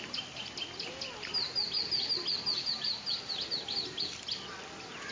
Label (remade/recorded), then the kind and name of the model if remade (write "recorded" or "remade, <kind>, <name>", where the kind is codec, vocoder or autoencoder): recorded